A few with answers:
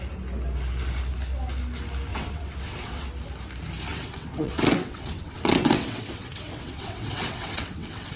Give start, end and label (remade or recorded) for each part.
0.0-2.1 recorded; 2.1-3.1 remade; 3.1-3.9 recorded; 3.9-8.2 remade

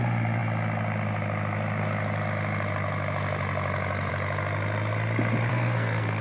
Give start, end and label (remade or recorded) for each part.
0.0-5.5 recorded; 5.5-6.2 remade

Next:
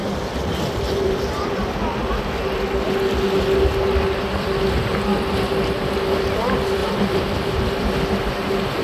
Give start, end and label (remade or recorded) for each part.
0.0-2.1 remade; 2.1-6.8 recorded; 6.8-7.8 remade; 7.8-8.8 recorded

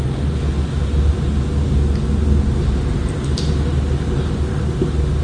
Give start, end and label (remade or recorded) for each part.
0.0-5.2 recorded

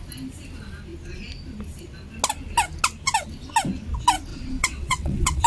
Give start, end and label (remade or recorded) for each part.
0.0-4.3 recorded; 4.3-5.5 remade

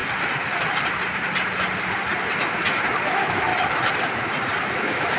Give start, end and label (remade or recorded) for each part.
0.0-3.1 recorded; 3.1-3.5 remade; 3.5-4.7 recorded; 4.7-5.2 remade